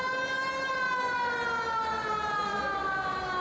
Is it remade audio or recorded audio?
recorded